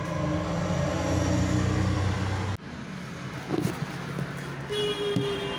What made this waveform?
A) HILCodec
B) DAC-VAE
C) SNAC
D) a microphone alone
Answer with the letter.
D